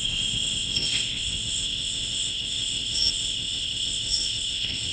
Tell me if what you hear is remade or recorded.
remade